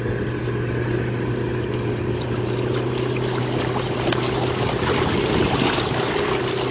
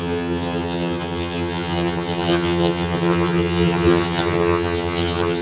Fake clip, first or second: second